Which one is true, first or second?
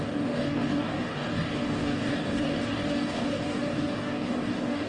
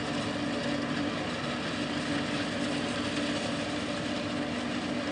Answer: second